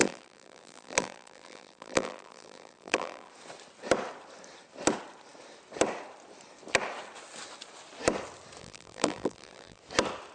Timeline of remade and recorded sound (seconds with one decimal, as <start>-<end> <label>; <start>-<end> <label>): 0.0-3.3 remade; 3.3-8.6 recorded; 8.6-9.8 remade; 9.8-10.3 recorded